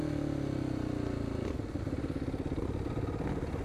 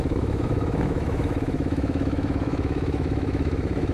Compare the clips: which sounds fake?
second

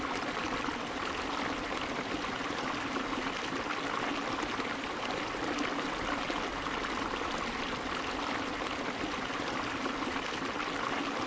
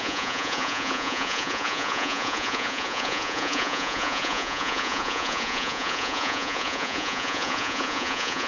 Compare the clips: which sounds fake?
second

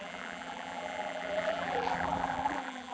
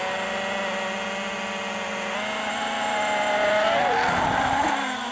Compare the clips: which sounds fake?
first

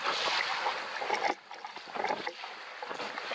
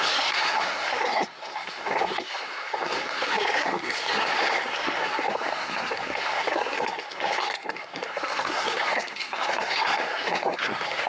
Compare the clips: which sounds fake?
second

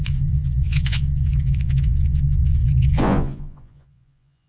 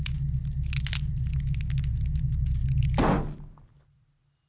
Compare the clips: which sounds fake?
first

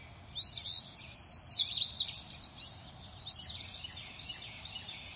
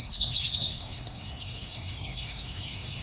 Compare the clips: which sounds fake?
second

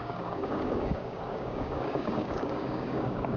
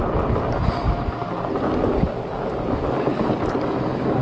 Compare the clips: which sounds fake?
first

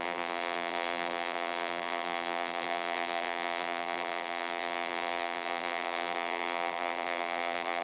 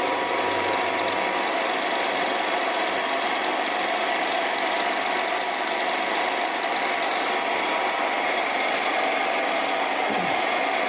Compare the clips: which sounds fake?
first